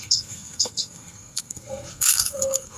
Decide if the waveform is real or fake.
fake